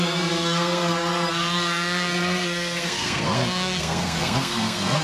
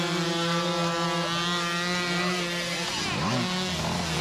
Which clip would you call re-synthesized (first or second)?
first